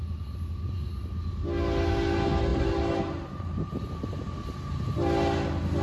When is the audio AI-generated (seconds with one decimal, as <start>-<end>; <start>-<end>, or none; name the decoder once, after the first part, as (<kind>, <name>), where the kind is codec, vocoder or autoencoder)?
2.5-4.1 (vocoder, BigVGAN v2)